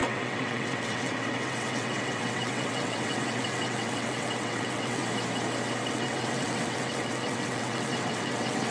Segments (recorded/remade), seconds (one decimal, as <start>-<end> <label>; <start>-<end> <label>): 0.0-5.0 remade; 5.0-5.9 recorded; 5.9-8.7 remade